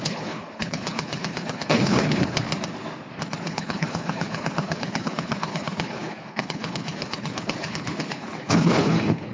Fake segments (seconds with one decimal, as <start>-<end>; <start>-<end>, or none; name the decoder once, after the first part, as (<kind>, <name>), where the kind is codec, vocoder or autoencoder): 0.0-2.5 (codec, HILCodec); 3.4-9.3